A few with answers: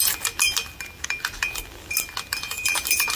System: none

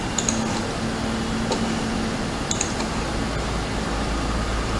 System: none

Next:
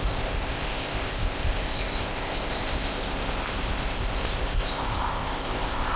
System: codec, ZipCodec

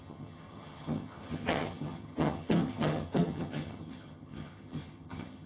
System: vocoder, HiFi-GAN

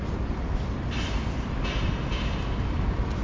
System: none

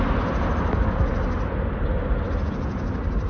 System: none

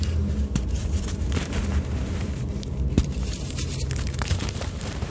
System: vocoder, BigVGAN v2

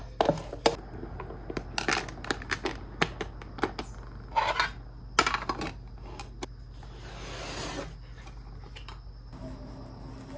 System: none